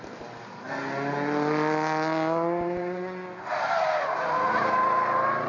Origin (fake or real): real